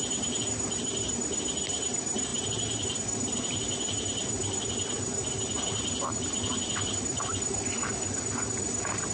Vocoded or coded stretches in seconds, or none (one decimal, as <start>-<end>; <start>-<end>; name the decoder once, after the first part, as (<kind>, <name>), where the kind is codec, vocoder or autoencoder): none